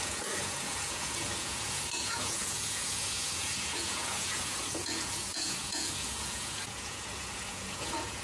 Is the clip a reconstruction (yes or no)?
yes